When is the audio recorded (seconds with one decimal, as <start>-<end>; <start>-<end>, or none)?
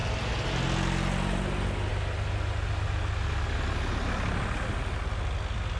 0.0-5.8